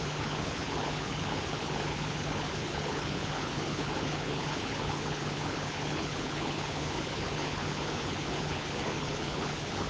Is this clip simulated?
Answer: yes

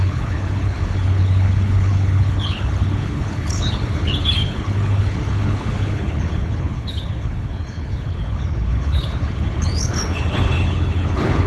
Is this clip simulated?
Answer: yes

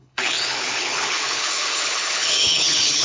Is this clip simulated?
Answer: yes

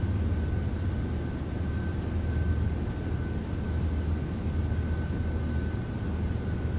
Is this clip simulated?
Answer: no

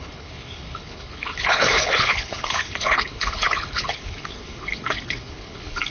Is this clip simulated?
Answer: yes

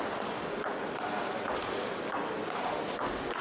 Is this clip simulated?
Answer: no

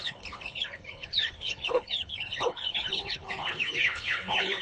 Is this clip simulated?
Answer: yes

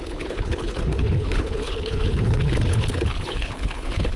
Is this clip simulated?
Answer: yes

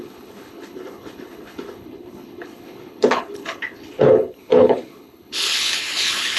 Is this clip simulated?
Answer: yes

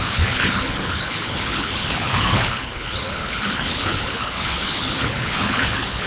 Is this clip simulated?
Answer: yes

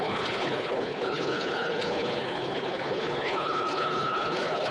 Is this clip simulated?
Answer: yes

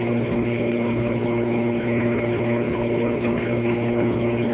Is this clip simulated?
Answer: yes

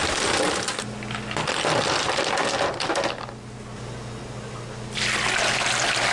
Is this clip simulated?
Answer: no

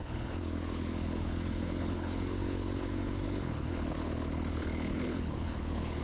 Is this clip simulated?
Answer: yes